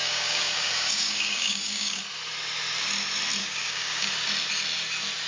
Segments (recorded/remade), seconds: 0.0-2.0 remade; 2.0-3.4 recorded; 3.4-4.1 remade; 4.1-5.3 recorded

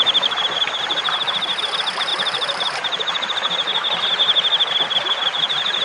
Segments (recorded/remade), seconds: 0.0-2.1 recorded; 2.1-4.0 remade; 4.0-5.8 recorded

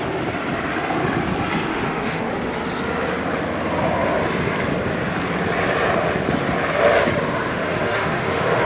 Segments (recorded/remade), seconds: 0.0-1.7 recorded; 1.7-2.3 remade; 2.3-7.5 recorded; 7.5-8.6 remade

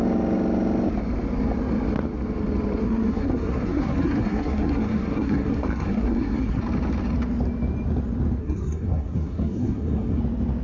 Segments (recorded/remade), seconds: 0.0-2.8 recorded; 2.8-6.6 remade; 6.6-8.4 recorded; 8.4-10.2 remade; 10.2-10.6 recorded

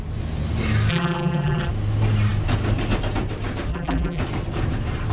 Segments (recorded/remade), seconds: 0.0-0.9 recorded; 0.9-1.7 remade; 1.7-3.7 recorded; 3.7-4.2 remade; 4.2-5.1 recorded